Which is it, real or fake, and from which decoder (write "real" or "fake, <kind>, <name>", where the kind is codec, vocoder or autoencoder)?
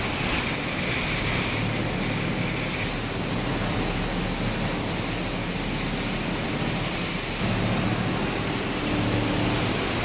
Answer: real